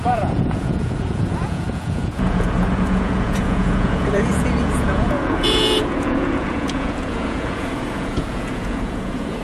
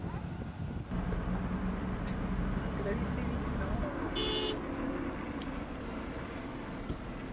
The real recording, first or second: second